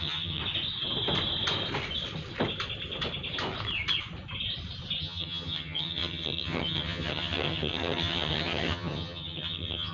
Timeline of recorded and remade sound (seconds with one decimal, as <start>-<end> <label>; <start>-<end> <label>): 0.0-0.4 remade; 0.4-5.0 recorded; 5.0-9.9 remade